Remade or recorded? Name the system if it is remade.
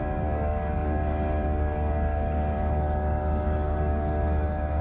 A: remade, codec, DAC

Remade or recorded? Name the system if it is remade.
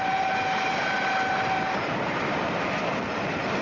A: recorded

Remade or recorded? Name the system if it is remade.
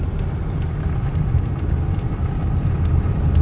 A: recorded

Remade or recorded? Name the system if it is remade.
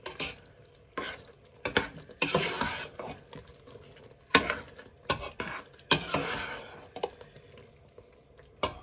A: recorded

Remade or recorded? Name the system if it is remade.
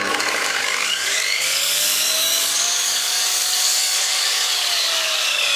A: remade, codec, DAC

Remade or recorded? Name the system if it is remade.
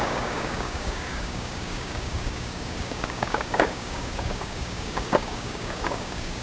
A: remade, codec, DAC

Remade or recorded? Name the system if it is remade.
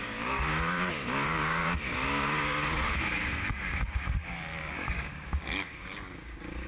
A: remade, codec, DAC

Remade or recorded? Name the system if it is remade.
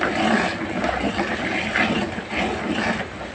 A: recorded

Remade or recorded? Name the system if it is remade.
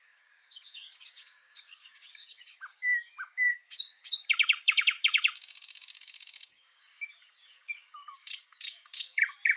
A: remade, codec, DAC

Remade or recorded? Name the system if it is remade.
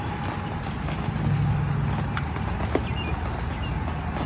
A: recorded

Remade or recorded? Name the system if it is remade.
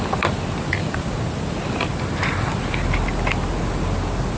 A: recorded